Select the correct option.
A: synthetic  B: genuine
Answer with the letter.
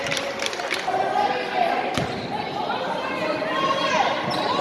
B